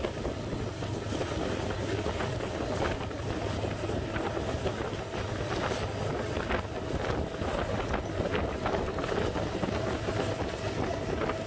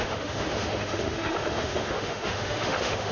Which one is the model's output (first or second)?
second